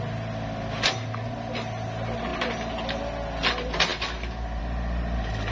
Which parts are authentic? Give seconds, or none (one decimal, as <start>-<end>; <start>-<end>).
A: 0.0-5.5